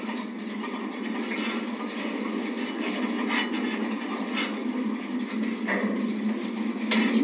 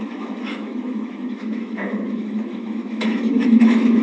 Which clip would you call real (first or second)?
first